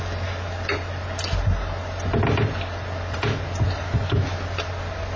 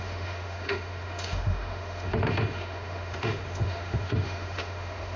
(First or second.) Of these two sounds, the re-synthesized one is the second